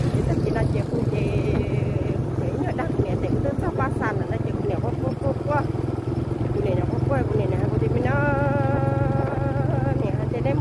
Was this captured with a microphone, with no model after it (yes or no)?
yes